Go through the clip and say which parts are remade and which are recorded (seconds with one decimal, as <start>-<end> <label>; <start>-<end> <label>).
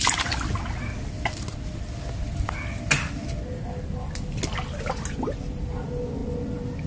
0.0-6.9 recorded